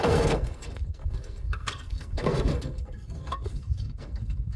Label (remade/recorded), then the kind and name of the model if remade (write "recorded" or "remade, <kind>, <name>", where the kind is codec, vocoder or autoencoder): remade, codec, SNAC